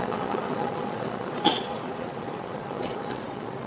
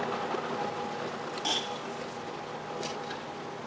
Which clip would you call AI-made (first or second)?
first